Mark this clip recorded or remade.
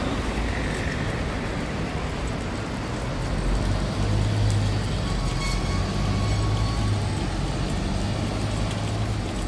recorded